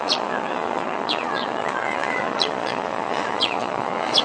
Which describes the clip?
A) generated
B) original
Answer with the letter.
A